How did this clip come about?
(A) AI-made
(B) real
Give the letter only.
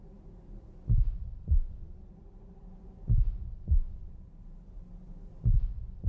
B